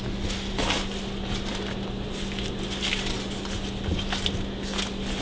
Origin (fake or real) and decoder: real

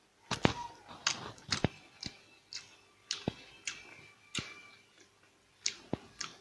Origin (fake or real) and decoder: real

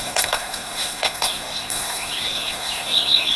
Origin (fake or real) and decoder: fake, codec, SNAC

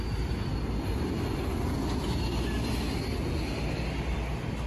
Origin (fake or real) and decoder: real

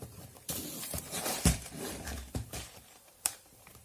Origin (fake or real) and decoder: fake, vocoder, BigVGAN v2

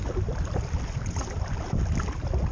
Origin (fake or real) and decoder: real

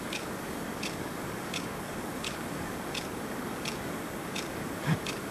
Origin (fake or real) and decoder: fake, codec, DAC